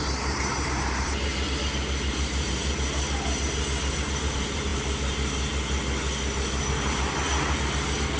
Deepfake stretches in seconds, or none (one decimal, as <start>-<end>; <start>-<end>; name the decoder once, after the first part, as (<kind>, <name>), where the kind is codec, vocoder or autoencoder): 0.0-1.3 (vocoder, BigVGAN v2); 2.1-2.6; 3.9-4.7